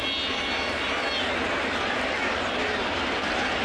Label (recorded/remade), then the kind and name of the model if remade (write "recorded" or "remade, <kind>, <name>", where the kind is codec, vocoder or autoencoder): recorded